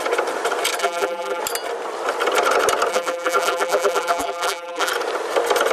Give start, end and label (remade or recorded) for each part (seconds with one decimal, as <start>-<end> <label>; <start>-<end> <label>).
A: 0.0-0.8 recorded; 0.8-1.4 remade; 1.4-2.9 recorded; 2.9-4.9 remade; 4.9-5.7 recorded